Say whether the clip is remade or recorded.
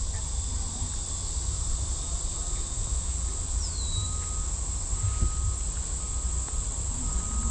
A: recorded